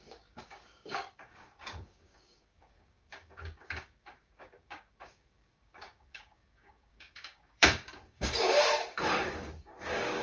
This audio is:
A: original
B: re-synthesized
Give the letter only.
B